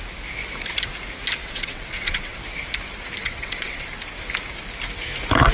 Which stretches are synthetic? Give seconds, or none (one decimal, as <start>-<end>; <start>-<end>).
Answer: 1.4-2.4; 3.2-3.9